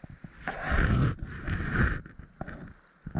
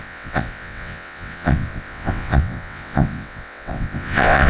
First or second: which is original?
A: first